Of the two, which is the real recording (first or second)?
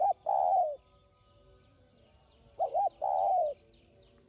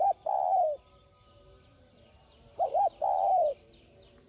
first